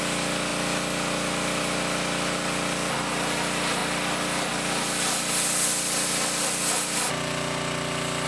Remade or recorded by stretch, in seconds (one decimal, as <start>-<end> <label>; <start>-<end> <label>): 0.0-8.3 recorded